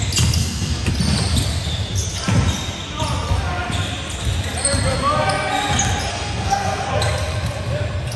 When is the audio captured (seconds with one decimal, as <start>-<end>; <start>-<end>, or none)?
0.0-0.4; 0.9-6.1; 6.9-8.2